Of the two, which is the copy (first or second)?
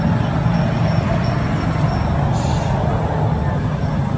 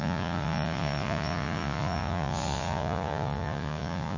second